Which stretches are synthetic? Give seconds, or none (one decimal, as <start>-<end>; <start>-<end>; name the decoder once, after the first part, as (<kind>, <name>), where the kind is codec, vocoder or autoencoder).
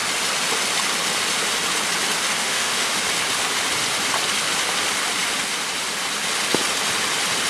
2.4-3.0 (autoencoder, DAC-VAE)